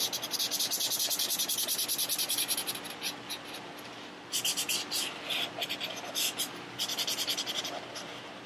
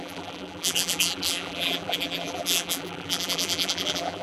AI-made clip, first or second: second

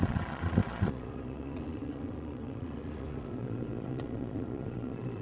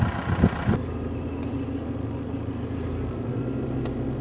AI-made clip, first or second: first